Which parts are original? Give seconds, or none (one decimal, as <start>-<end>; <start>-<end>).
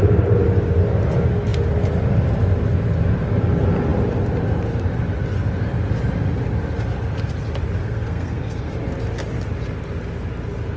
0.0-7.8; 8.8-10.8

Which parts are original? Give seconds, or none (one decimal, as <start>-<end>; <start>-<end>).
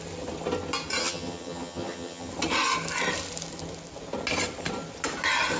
0.0-1.0; 2.3-5.6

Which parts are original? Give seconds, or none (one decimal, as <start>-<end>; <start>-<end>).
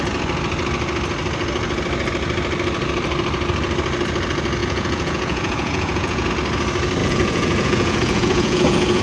0.0-4.6; 6.3-7.0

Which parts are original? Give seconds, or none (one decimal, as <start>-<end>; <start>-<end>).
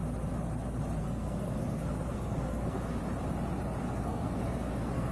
0.0-1.0; 3.0-3.8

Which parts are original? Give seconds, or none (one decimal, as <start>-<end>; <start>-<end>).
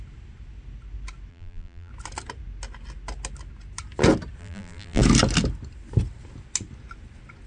0.0-1.3; 1.9-4.4; 5.0-7.5